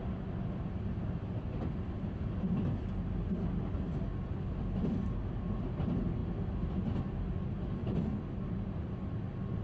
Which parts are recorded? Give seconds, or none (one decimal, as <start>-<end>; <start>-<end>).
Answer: 0.0-9.6